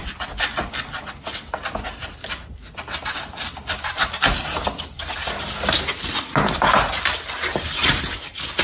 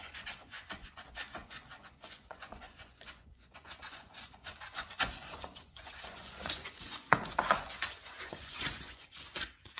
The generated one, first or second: second